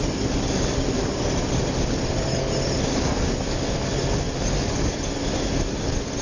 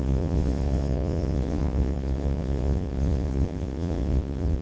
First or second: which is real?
first